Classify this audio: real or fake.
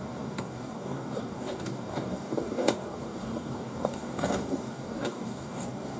fake